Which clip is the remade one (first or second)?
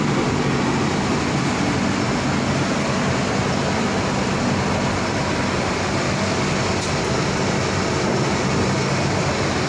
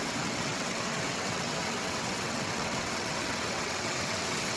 second